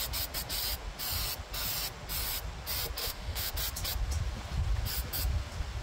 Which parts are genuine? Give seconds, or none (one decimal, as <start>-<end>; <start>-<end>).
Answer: 0.0-3.0; 3.5-5.8

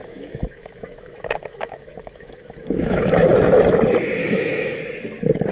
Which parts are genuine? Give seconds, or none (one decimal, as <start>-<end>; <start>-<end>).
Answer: 3.3-4.2; 4.8-5.5